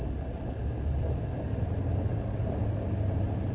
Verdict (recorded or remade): recorded